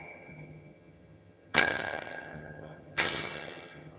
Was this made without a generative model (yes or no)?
no